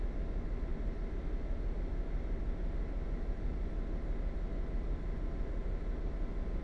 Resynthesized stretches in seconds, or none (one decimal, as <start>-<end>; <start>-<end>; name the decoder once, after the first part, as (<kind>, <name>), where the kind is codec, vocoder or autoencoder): none